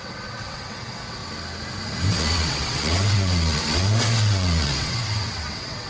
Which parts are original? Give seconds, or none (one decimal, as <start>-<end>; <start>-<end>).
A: 1.2-2.1